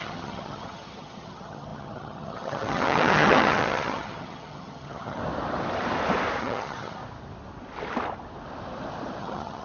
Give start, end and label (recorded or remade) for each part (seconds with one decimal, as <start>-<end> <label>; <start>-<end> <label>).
0.0-5.2 remade; 5.2-6.4 recorded; 6.4-7.0 remade; 7.0-9.2 recorded; 9.2-9.6 remade